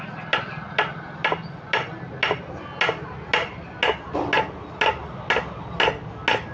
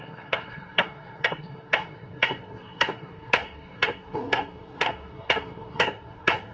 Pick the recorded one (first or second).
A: first